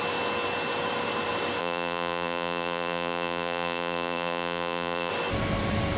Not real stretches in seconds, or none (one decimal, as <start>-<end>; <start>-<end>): 1.6-5.1